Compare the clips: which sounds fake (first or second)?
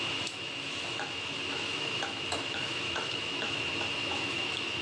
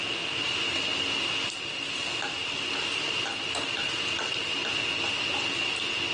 first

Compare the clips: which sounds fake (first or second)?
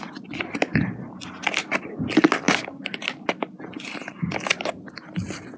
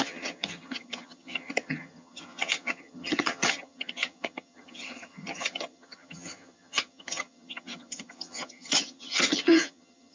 second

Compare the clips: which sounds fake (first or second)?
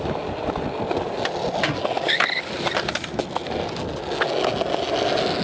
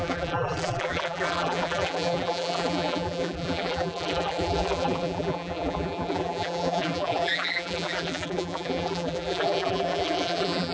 second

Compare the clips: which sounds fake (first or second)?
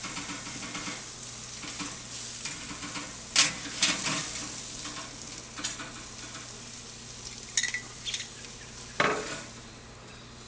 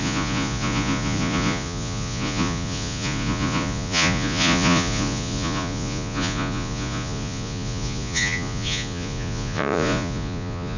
second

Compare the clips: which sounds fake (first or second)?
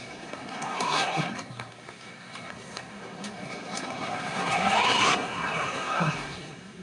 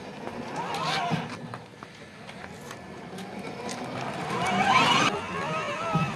first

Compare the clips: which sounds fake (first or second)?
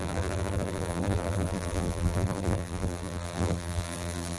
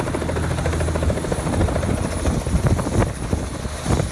first